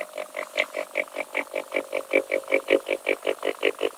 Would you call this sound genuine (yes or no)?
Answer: yes